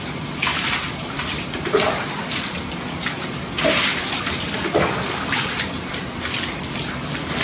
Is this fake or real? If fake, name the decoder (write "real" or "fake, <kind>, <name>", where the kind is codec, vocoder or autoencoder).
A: real